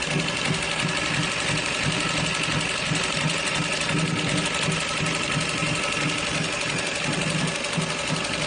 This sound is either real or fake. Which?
real